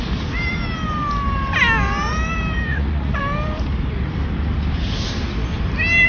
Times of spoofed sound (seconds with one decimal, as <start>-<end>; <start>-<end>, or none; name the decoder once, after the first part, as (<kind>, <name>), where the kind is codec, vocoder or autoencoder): 2.7-3.2 (vocoder, Vocos)